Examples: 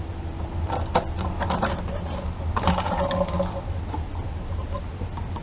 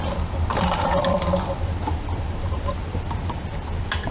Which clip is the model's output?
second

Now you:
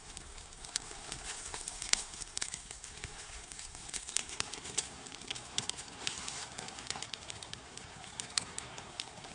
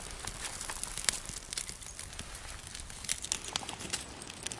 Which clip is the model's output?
first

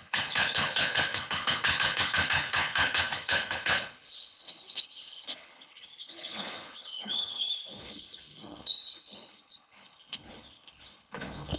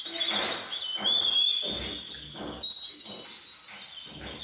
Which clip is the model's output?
first